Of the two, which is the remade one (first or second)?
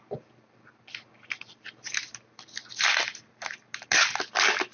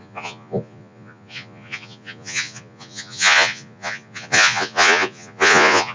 second